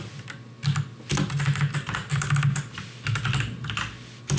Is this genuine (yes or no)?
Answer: yes